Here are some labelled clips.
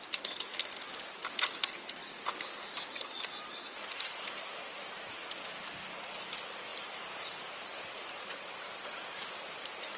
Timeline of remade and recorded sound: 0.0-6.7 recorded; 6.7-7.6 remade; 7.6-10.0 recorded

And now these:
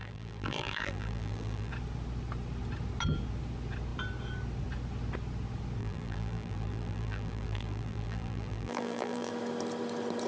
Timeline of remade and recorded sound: 0.0-1.7 remade; 1.7-5.8 recorded; 5.8-9.3 remade; 9.3-10.3 recorded

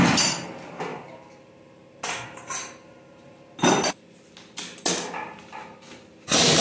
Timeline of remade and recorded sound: 0.0-6.6 recorded

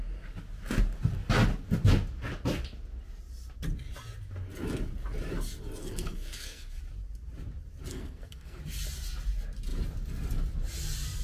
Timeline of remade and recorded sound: 0.0-5.8 recorded; 5.8-6.8 remade; 6.8-7.9 recorded; 7.9-8.6 remade; 8.6-11.2 recorded

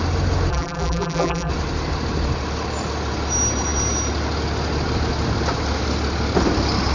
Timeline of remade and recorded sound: 0.0-0.5 recorded; 0.5-1.5 remade; 1.5-6.9 recorded

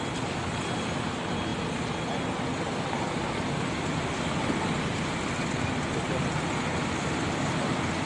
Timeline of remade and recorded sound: 0.0-8.1 recorded

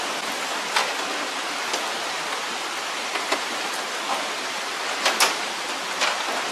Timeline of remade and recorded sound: 0.0-0.8 recorded; 0.8-4.7 remade; 4.7-6.5 recorded